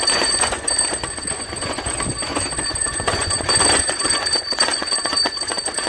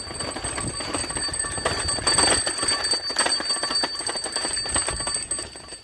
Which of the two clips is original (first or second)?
second